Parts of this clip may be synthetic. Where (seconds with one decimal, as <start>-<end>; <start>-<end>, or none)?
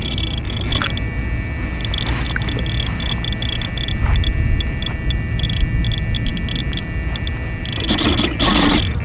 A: none